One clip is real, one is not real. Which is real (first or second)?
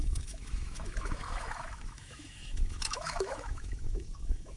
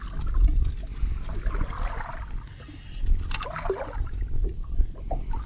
second